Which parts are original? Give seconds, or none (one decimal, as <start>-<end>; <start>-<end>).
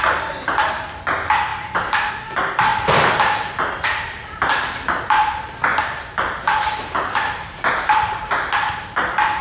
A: 0.0-9.4